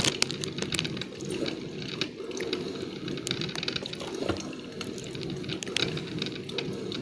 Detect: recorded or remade recorded